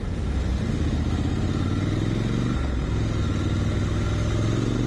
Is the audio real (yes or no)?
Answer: yes